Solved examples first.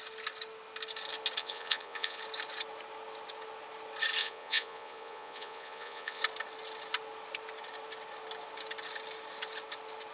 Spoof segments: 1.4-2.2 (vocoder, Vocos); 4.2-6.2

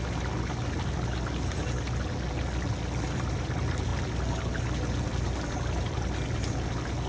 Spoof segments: none

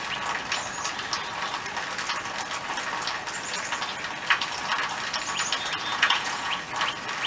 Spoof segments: 5.9-6.6 (vocoder, Vocos)

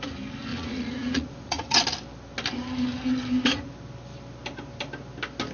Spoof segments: 0.5-1.8 (vocoder, Vocos)